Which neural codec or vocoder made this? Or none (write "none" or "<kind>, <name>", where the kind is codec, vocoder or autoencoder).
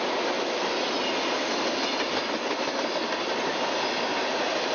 none